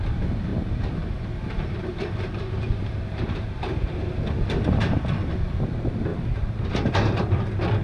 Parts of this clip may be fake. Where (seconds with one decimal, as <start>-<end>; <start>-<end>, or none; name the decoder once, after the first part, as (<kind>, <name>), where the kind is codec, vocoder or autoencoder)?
0.5-4.2 (vocoder, BigVGAN v2); 6.1-6.7